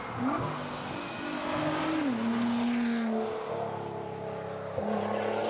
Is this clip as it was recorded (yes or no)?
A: yes